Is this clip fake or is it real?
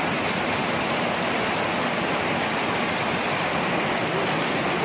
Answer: real